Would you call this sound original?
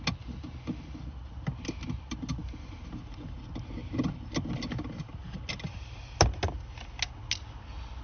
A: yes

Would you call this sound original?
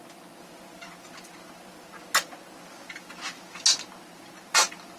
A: yes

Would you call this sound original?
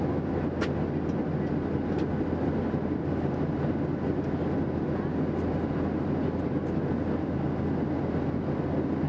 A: yes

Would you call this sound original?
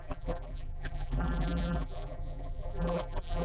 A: no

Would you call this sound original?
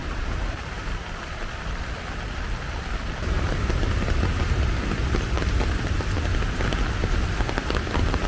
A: no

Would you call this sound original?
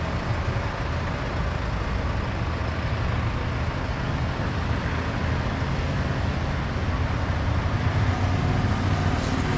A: yes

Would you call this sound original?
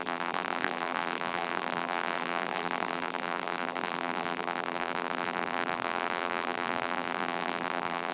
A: no